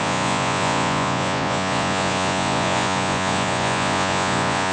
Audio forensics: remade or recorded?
remade